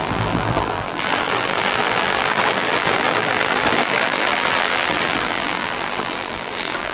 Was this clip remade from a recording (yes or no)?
yes